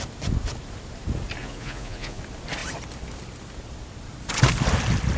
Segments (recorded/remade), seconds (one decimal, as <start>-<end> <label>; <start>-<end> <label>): 0.0-1.4 recorded; 1.4-2.2 remade; 2.2-5.2 recorded